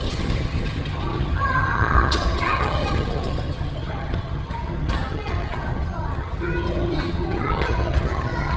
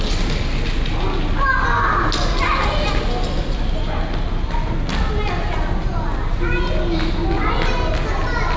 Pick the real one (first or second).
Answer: second